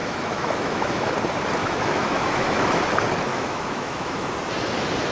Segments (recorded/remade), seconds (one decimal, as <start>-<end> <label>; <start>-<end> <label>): 0.0-1.1 remade; 1.1-1.6 recorded; 1.6-2.8 remade; 2.8-3.3 recorded; 3.3-4.3 remade; 4.3-5.1 recorded